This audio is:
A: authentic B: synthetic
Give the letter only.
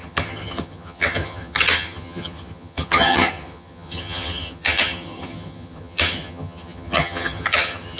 B